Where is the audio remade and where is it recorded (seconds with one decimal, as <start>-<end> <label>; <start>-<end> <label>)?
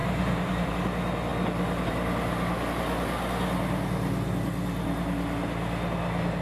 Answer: 0.0-0.7 remade; 0.7-6.4 recorded